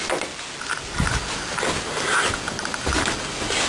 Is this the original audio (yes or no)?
yes